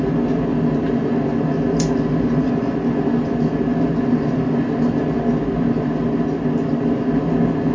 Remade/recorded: recorded